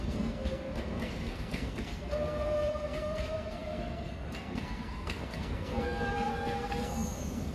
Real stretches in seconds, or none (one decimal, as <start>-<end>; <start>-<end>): none